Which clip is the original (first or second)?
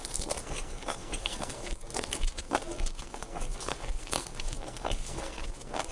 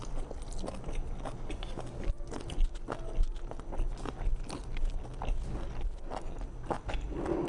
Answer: second